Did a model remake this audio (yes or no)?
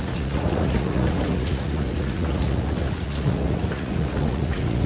yes